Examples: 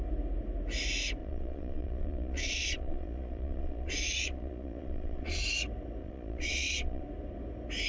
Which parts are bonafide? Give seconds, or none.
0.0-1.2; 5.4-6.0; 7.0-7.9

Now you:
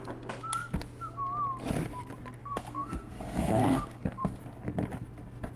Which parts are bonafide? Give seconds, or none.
0.0-2.4; 4.4-5.6

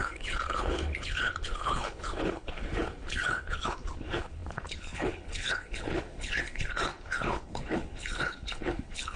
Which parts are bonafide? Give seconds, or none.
none